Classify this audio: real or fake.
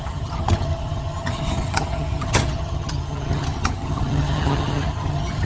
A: fake